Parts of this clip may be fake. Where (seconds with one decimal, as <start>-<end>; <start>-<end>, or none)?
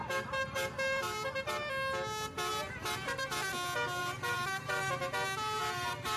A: 0.0-1.7; 2.5-3.5; 4.0-4.9; 5.6-6.2